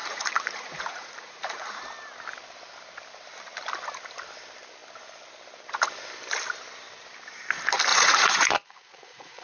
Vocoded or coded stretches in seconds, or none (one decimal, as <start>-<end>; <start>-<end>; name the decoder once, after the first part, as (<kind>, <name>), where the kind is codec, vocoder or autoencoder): 0.0-1.8 (vocoder, Vocos); 7.9-9.4